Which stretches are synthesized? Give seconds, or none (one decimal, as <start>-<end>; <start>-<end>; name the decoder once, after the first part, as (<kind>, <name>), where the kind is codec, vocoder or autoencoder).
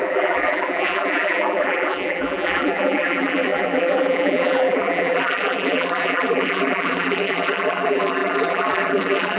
0.0-9.4 (vocoder, BigVGAN v2)